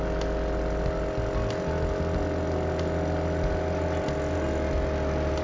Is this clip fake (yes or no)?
no